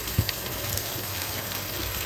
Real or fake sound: fake